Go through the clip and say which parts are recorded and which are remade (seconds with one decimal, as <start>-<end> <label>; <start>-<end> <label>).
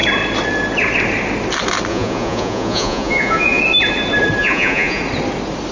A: 0.0-1.9 recorded; 1.9-3.6 remade; 3.6-4.4 recorded; 4.4-5.0 remade; 5.0-5.7 recorded